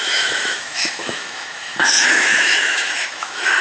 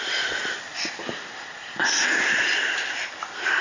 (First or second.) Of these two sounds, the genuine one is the second